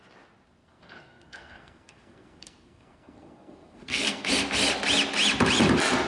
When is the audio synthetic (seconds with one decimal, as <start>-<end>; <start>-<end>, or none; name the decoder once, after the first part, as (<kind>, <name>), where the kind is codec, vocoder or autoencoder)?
0.6-4.3 (codec, SNAC)